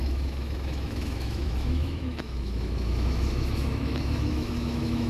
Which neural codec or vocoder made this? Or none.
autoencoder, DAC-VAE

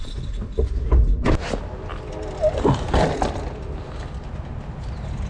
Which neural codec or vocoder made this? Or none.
none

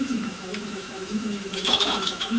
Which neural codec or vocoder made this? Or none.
autoencoder, DAC-VAE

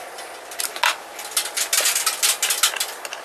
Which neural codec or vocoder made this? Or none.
none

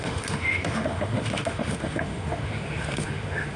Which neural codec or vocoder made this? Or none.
autoencoder, DAC-VAE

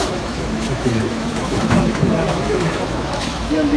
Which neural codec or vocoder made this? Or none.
autoencoder, DAC-VAE